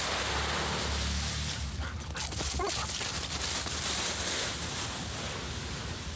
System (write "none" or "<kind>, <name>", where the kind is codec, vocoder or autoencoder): none